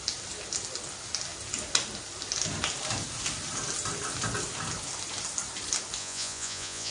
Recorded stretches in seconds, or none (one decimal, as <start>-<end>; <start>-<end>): 0.0-6.0